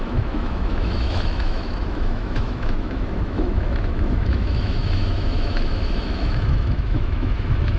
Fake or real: fake